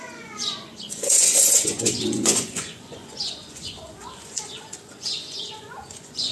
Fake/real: fake